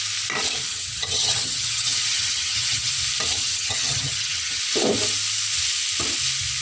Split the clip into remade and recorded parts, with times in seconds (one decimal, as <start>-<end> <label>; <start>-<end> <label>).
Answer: 0.0-0.7 recorded; 0.7-2.9 remade; 2.9-3.4 recorded; 3.4-4.6 remade; 4.6-6.6 recorded